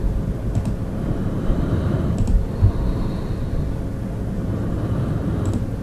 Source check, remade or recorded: recorded